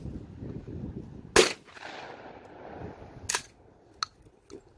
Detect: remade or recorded recorded